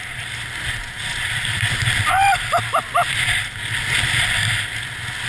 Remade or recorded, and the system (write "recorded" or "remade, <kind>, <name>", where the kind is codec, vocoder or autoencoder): recorded